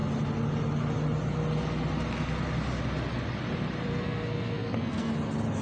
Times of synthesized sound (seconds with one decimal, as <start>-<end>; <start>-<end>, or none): 3.9-5.1

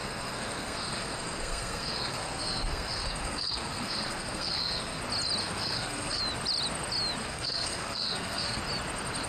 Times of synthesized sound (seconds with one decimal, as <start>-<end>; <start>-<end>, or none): 0.0-5.0; 5.4-6.2; 7.2-8.6

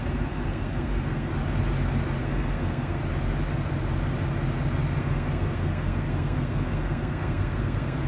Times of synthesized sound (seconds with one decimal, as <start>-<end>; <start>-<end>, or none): 0.0-1.3; 2.2-3.0; 5.0-8.1